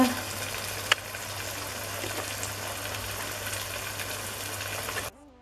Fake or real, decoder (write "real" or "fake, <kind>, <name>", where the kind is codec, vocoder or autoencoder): real